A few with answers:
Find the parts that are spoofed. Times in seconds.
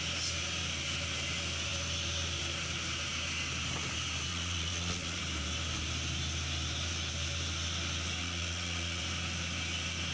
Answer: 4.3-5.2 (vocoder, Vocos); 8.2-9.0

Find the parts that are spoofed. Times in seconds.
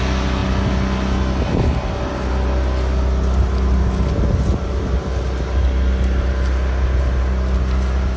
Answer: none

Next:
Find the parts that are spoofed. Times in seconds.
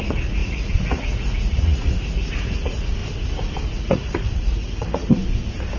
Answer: 0.0-3.0 (vocoder, Vocos); 3.7-5.2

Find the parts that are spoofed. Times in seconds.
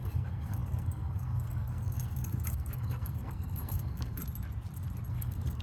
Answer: 0.0-4.2 (codec, SNAC); 5.1-5.6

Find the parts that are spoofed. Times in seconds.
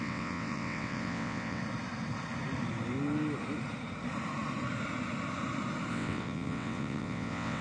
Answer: 0.0-1.6 (vocoder, WaveNeXt); 5.9-7.6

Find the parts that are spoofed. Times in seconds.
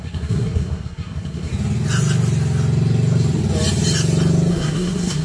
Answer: 0.0-1.5 (codec, SNAC); 4.5-5.2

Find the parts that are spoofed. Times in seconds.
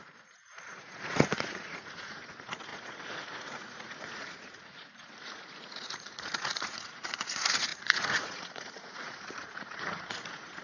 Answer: 0.0-10.6 (vocoder, Vocos)